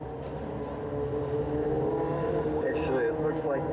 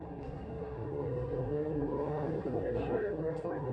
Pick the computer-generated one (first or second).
second